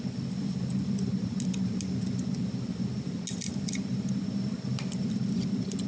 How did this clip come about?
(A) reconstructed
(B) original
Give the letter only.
B